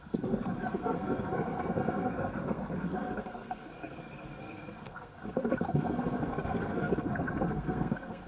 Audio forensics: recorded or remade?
remade